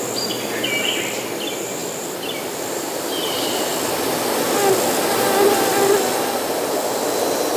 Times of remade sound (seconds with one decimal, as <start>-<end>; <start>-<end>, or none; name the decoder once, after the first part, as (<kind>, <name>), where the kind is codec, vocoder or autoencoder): 1.8-3.0 (vocoder, BigVGAN v2); 3.7-4.4